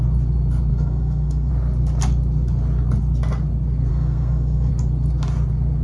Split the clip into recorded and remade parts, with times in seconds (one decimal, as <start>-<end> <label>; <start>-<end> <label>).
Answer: 0.0-0.7 recorded; 0.7-1.5 remade; 1.5-3.9 recorded; 3.9-4.7 remade; 4.7-5.8 recorded